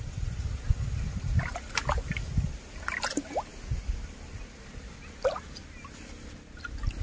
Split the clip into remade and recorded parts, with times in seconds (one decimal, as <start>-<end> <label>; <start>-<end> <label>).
0.0-7.0 recorded